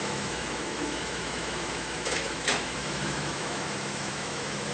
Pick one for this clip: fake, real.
fake